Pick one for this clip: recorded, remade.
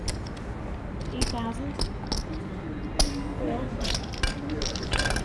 recorded